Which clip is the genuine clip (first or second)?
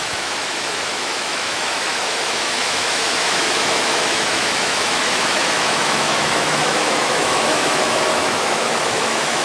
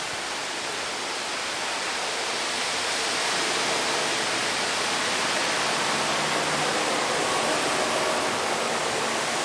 second